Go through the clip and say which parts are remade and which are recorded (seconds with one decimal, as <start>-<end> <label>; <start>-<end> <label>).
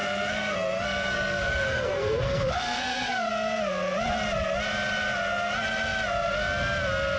0.0-3.3 remade; 3.3-7.2 recorded